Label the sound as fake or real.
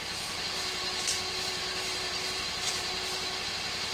real